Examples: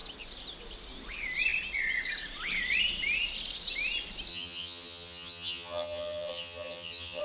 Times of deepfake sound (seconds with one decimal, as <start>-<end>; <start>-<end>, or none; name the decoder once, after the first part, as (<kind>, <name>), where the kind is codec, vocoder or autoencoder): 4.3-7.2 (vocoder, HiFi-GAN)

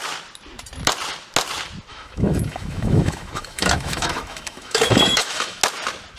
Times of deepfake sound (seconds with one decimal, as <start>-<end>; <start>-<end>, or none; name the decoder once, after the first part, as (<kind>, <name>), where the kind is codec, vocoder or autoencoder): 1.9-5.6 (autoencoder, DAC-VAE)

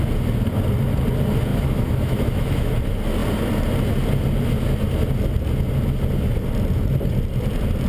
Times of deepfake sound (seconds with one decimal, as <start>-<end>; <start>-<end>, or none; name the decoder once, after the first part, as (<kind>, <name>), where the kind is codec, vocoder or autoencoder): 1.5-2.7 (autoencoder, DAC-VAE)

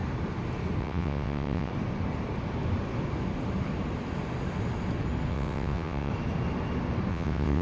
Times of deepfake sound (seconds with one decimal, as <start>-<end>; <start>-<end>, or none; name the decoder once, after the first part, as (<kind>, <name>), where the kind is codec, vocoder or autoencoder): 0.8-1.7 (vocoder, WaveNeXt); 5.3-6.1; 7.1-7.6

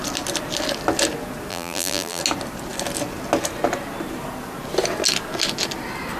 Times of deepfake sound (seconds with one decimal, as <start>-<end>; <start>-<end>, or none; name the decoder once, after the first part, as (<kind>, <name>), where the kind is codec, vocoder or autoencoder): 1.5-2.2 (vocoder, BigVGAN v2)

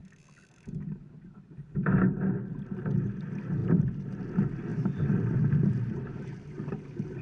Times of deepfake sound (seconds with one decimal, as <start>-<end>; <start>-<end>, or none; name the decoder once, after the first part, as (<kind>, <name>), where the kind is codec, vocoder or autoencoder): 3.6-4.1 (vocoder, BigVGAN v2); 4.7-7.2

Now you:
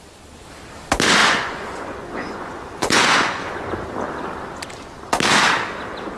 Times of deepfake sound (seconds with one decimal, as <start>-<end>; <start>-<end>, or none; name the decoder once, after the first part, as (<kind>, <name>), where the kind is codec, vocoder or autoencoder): 1.2-3.7 (vocoder, Vocos)

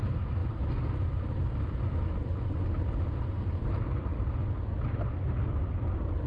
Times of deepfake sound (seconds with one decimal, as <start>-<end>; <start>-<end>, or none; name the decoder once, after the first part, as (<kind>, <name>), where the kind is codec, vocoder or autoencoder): none